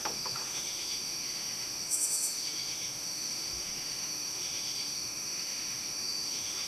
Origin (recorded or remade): remade